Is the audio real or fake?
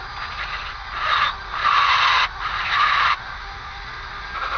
real